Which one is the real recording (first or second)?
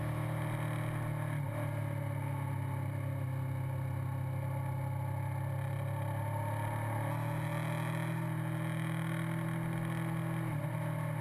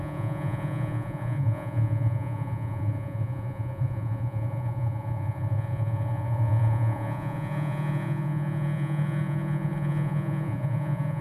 first